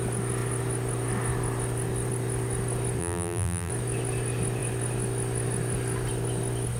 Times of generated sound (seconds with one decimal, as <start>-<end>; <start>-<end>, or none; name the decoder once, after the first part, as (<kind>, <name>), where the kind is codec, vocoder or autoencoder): 3.0-3.7 (vocoder, BigVGAN v2)